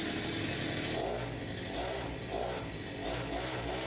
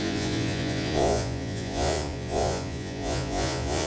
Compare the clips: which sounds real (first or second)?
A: first